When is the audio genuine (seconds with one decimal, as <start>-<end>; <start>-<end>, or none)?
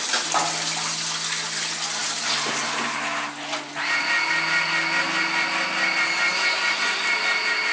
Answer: 0.0-7.7